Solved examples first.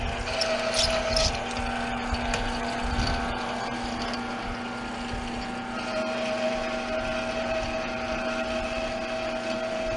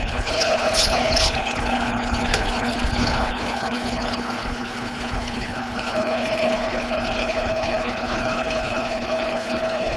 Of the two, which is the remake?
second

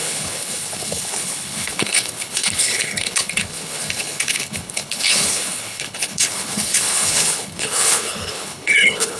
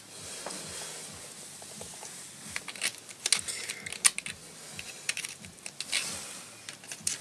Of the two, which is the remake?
first